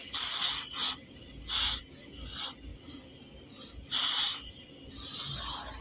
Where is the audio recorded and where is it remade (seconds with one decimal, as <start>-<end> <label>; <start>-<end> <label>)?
0.0-5.8 recorded